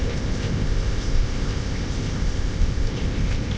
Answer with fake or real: fake